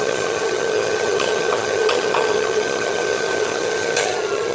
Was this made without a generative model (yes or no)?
no